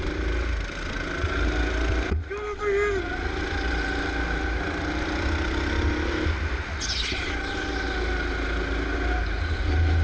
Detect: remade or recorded recorded